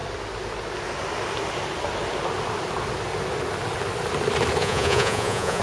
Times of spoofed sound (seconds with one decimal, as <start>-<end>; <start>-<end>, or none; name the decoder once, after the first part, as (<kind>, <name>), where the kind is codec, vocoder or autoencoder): 4.6-5.6 (vocoder, Vocos)